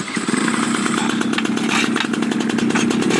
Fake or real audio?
real